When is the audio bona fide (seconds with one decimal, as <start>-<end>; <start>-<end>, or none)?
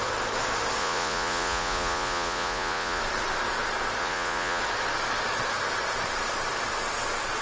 0.0-0.8; 3.0-4.0; 4.6-7.4